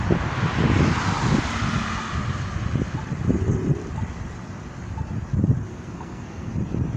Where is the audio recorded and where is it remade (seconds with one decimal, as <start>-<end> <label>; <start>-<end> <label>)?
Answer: 0.0-5.7 recorded; 5.7-6.5 remade; 6.5-7.0 recorded